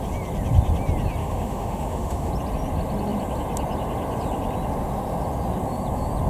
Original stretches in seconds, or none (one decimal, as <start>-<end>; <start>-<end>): 0.0-1.2; 2.3-6.3